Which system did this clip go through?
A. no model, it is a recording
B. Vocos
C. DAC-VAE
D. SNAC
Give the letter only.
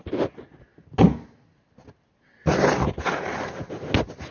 A